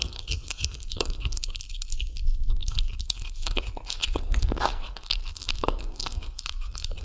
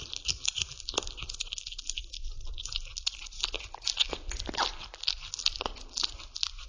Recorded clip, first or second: second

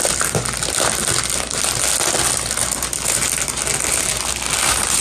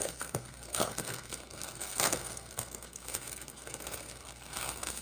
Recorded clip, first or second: first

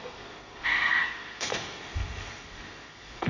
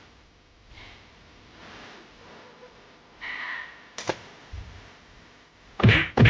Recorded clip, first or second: second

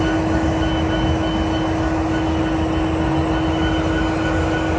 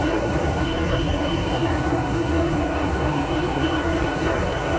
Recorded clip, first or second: first